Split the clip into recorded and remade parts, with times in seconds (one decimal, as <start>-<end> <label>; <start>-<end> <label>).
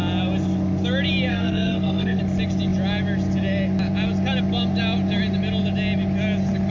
0.0-1.3 recorded; 1.3-2.2 remade; 2.2-6.7 recorded